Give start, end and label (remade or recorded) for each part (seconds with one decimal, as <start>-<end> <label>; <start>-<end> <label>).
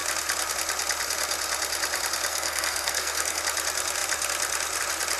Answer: 0.0-2.3 recorded; 2.3-3.4 remade; 3.4-5.2 recorded